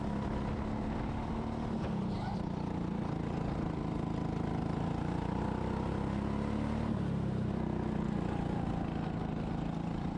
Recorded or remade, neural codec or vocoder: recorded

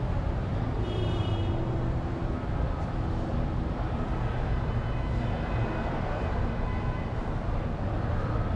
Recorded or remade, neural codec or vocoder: remade, vocoder, BigVGAN v2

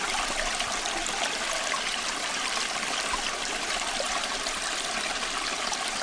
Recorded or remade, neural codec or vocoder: recorded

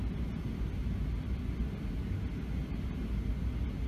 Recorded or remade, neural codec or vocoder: recorded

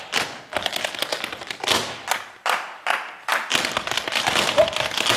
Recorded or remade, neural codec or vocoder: recorded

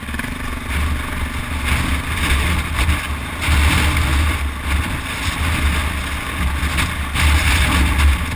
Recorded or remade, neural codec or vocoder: recorded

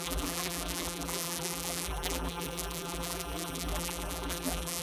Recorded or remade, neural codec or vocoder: remade, vocoder, BigVGAN v2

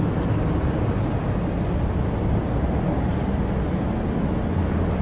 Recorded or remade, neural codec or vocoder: recorded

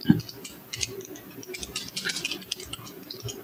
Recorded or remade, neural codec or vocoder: recorded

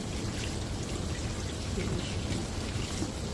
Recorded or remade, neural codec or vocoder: recorded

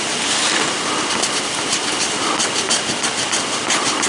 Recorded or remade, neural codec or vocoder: recorded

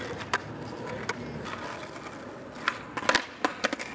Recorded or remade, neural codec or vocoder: recorded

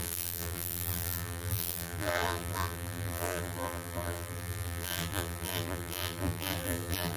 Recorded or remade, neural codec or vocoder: remade, vocoder, BigVGAN v2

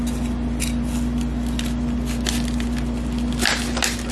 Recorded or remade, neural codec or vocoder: recorded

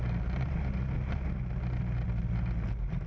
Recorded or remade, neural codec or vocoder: recorded